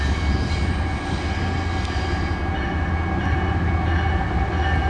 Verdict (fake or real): real